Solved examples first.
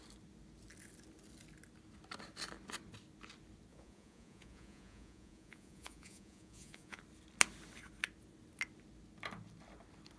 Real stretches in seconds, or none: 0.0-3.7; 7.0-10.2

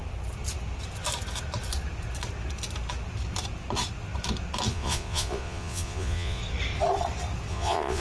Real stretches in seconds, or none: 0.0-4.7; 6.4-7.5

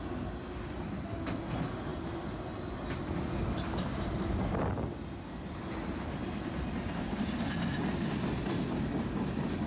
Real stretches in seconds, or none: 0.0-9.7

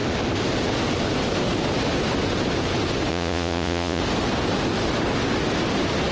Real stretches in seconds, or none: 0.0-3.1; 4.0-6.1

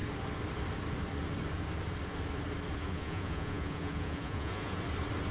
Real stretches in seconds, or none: 0.0-2.8; 4.8-5.3